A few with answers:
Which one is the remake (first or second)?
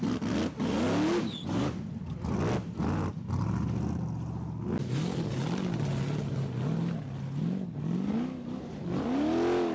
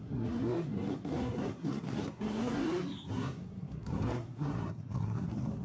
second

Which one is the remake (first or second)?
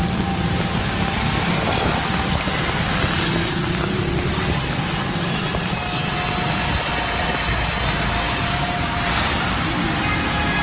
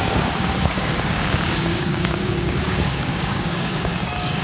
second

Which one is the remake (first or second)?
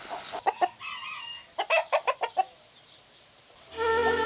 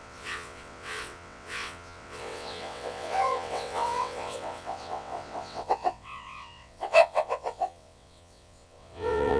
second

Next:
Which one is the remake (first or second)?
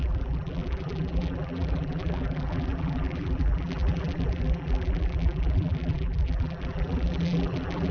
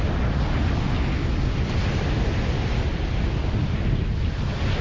first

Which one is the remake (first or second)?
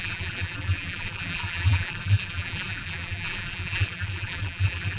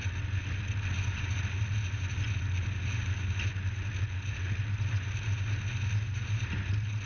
first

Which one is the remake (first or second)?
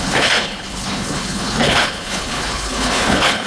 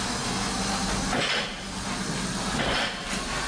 first